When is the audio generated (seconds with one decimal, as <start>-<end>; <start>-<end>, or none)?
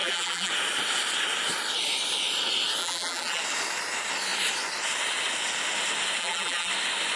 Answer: 0.0-0.5; 2.8-3.4; 6.2-6.7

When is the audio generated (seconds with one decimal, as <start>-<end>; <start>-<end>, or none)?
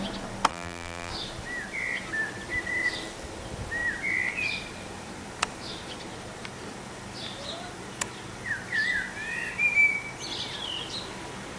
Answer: 0.5-1.1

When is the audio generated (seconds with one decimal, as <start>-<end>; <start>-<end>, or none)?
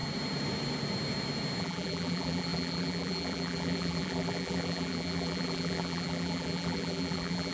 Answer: 1.6-7.5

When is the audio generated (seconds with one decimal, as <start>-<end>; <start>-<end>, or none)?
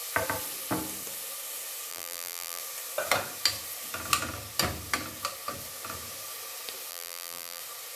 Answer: 1.9-2.6; 6.9-7.6